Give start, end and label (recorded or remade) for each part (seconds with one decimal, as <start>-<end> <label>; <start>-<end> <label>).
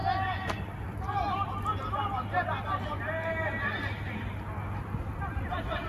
0.0-5.9 recorded